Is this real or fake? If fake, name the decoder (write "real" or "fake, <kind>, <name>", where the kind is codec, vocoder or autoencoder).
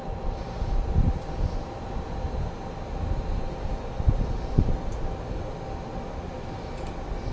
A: real